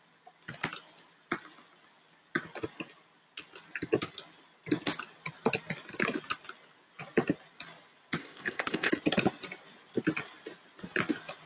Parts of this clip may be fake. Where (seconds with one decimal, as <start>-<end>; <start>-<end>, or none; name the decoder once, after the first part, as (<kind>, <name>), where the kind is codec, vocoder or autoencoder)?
8.2-8.9 (codec, ZipCodec)